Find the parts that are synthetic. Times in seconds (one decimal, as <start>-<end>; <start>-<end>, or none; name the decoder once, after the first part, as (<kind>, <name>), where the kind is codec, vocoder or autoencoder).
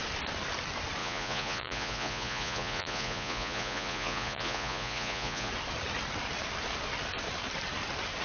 1.0-5.5 (vocoder, Vocos)